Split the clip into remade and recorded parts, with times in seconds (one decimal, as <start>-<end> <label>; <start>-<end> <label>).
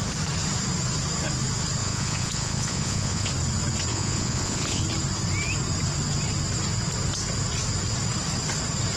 0.0-1.8 recorded; 1.8-3.3 remade; 3.3-3.9 recorded; 3.9-4.8 remade; 4.8-9.0 recorded